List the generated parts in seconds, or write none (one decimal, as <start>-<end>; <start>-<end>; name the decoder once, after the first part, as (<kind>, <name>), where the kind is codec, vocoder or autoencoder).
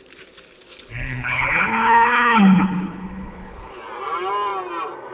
0.7-3.8 (codec, HILCodec)